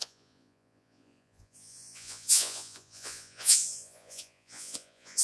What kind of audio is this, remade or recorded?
remade